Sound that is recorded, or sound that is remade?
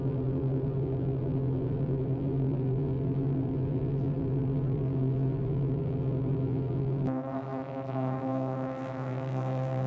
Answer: remade